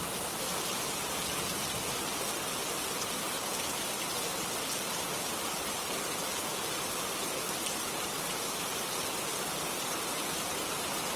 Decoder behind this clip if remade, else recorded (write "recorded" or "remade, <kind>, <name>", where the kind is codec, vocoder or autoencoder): recorded